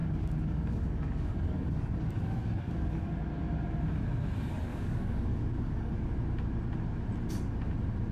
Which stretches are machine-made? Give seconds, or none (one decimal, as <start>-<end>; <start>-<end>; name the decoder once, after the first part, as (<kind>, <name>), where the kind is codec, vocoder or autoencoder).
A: 0.0-3.1 (codec, DAC); 4.7-6.0